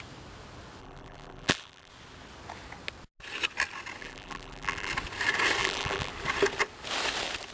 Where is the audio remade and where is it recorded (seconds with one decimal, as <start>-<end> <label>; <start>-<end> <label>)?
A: 0.0-0.8 recorded; 0.8-1.9 remade; 1.9-4.0 recorded; 4.0-4.9 remade; 4.9-5.6 recorded; 5.6-6.1 remade; 6.1-7.5 recorded